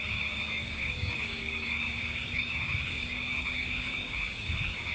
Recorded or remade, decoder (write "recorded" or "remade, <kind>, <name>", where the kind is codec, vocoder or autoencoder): remade, codec, DAC